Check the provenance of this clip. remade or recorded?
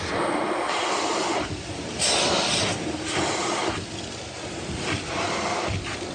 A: recorded